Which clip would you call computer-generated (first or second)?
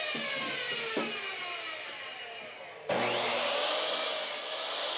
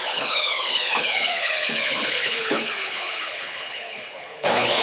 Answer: second